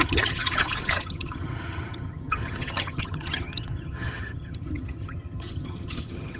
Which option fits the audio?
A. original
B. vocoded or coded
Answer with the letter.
B